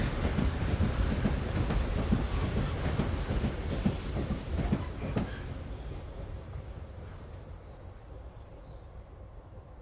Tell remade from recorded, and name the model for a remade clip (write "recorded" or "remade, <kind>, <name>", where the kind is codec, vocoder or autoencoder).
recorded